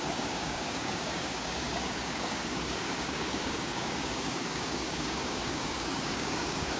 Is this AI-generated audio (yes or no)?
yes